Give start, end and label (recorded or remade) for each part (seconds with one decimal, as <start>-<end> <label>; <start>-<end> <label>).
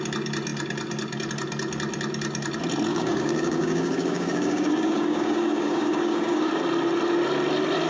0.0-2.9 recorded; 2.9-6.5 remade; 6.5-7.9 recorded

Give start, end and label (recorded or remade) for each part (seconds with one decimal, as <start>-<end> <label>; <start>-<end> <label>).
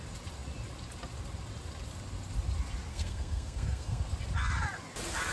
0.0-2.9 recorded; 2.9-4.0 remade; 4.0-5.3 recorded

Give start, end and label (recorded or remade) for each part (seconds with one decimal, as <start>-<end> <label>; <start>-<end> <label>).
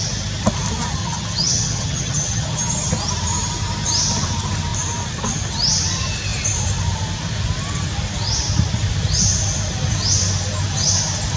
0.0-1.0 recorded; 1.0-2.9 remade; 2.9-11.4 recorded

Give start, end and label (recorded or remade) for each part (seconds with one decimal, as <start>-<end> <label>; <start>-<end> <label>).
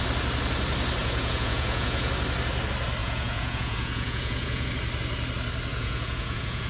0.0-1.0 recorded; 1.0-2.1 remade; 2.1-3.0 recorded; 3.0-4.7 remade; 4.7-5.7 recorded; 5.7-6.7 remade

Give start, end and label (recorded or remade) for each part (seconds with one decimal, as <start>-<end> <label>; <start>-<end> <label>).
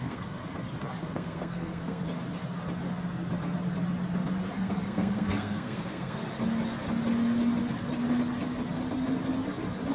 0.0-0.4 remade; 0.4-1.0 recorded; 1.0-2.0 remade; 2.0-4.5 recorded; 4.5-6.2 remade; 6.2-9.9 recorded